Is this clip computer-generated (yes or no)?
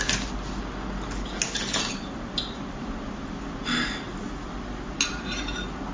no